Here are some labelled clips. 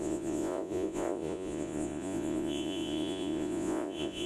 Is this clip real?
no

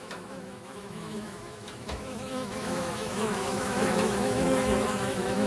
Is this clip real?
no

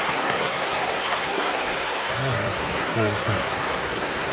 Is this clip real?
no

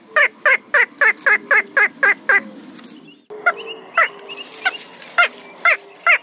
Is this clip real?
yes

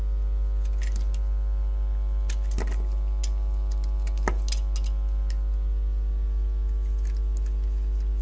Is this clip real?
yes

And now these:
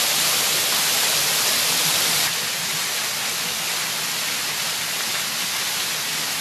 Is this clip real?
yes